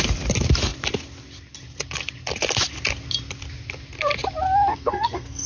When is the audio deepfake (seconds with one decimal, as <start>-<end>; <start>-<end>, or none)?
4.7-5.5